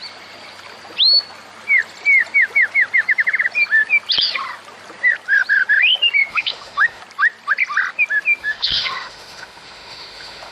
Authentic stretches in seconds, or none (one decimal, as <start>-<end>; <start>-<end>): 0.0-6.3; 7.0-8.4